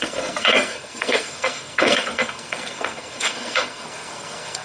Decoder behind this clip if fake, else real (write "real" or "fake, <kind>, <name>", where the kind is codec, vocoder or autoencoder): fake, codec, SNAC